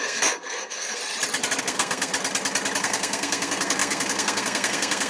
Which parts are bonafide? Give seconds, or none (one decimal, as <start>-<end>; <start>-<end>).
1.0-1.6; 2.1-2.8